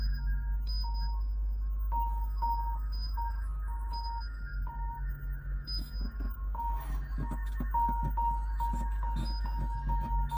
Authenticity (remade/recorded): remade